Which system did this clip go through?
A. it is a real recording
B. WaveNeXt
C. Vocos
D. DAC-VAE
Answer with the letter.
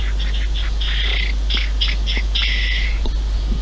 A